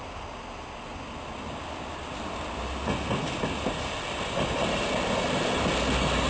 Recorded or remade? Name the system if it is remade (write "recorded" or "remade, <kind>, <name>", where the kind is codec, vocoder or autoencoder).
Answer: recorded